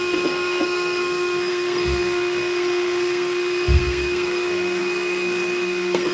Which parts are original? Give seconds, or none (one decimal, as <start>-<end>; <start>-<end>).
none